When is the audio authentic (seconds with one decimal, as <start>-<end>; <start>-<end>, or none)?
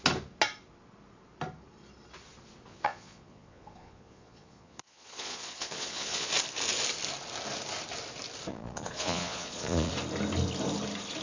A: 0.0-2.7; 6.3-8.5; 9.9-11.2